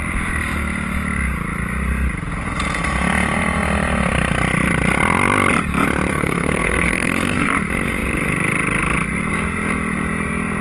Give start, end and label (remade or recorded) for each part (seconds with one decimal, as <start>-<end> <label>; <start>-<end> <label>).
0.0-6.1 recorded; 6.1-7.5 remade; 7.5-10.6 recorded